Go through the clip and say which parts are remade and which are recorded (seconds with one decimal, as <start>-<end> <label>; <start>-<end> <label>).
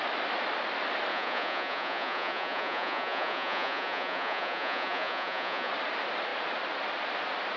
0.0-1.1 recorded; 1.1-5.7 remade; 5.7-7.6 recorded